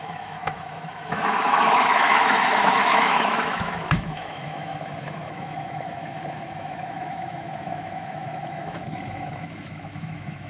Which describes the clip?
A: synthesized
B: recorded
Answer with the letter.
A